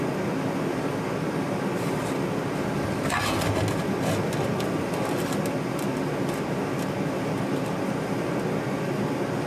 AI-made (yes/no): no